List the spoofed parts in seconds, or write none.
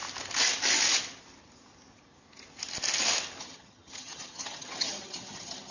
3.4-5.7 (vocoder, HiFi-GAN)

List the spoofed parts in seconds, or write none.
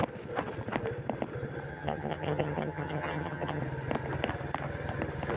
1.7-3.6 (vocoder, HiFi-GAN)